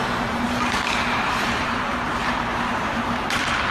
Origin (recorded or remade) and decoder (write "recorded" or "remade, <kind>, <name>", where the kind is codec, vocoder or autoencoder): remade, vocoder, BigVGAN v2